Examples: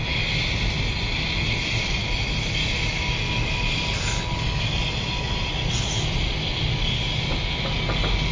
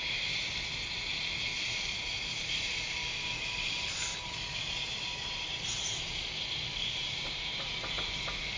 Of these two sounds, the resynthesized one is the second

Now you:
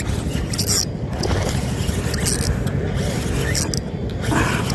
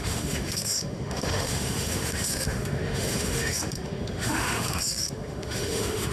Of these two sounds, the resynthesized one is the second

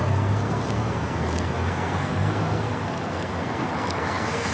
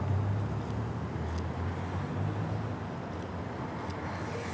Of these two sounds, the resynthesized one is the first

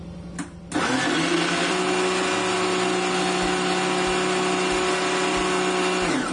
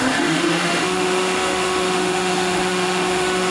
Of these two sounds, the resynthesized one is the second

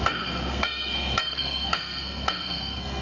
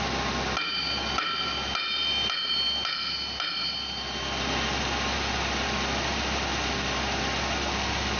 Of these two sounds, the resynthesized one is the first